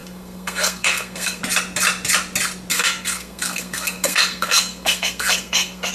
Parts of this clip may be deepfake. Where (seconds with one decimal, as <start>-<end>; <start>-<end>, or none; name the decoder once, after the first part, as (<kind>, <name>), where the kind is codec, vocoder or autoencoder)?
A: 0.0-1.4 (codec, SNAC); 2.7-5.9

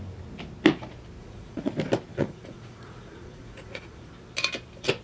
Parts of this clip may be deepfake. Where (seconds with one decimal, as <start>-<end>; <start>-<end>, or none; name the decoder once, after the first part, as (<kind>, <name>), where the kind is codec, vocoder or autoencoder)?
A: 1.2-1.7 (vocoder, Vocos); 2.1-4.1

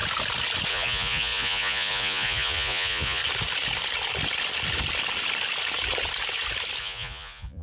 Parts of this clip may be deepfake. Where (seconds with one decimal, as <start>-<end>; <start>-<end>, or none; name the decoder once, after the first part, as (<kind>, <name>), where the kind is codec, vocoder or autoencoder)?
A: 0.7-3.2 (vocoder, Vocos); 6.8-7.6

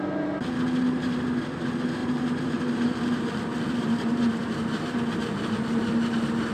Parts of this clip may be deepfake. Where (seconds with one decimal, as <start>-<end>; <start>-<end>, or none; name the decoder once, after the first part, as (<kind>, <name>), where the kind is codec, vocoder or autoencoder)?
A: 2.0-5.9 (vocoder, BigVGAN v2)

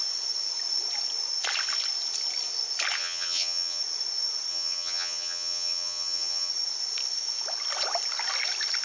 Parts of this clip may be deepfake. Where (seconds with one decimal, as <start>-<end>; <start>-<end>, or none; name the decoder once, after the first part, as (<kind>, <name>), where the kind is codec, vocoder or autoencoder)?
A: 3.0-3.8 (vocoder, HiFi-GAN); 4.5-6.5